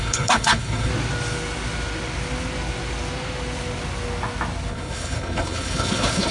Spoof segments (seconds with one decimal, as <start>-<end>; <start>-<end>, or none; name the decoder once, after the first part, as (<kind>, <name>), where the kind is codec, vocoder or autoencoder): 0.0-0.9 (codec, HILCodec); 4.7-6.3